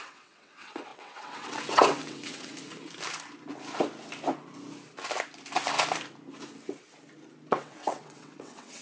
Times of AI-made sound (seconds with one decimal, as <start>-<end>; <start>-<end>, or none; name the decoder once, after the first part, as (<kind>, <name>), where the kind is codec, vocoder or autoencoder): 0.0-2.5 (vocoder, WaveNeXt); 7.5-8.8